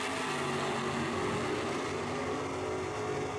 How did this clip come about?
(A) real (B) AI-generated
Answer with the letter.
A